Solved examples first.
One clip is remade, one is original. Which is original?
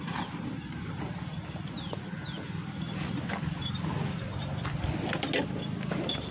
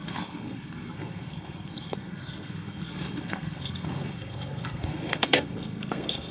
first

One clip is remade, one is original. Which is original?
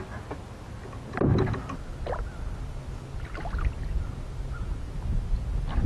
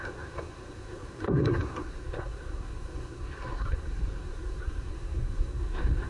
first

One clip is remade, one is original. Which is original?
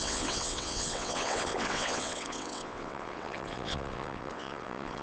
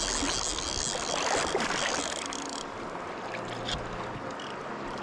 second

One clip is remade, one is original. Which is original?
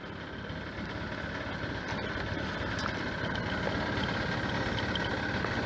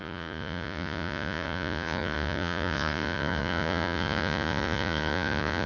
first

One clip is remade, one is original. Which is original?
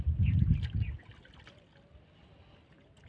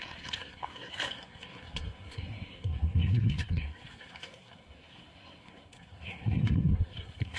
first